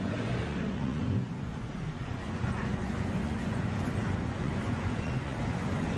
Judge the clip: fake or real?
fake